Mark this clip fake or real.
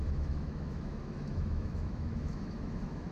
fake